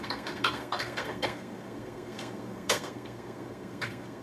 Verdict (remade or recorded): remade